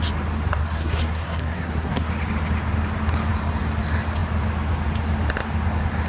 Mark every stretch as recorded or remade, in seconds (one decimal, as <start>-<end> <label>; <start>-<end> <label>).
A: 0.0-0.6 recorded; 0.6-2.1 remade; 2.1-6.1 recorded